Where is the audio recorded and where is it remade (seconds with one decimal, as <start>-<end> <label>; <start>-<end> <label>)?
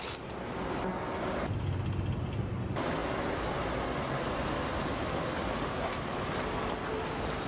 0.0-7.5 recorded